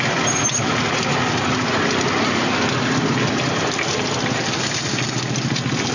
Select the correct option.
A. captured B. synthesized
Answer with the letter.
A